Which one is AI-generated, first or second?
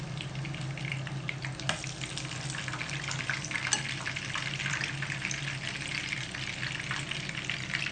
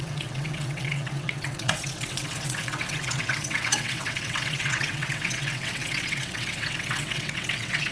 second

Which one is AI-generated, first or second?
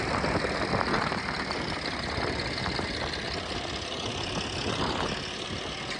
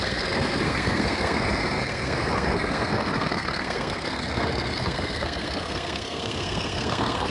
second